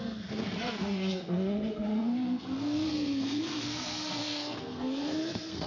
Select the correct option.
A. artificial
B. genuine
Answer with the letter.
A